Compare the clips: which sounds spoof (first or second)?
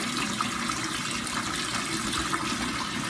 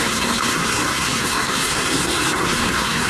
second